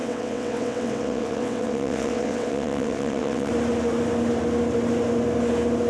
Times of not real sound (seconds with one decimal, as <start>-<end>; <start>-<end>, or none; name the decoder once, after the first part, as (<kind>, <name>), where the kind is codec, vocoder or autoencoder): 0.0-3.5 (vocoder, WaveNeXt)